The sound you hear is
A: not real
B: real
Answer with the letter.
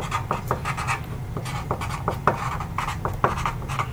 B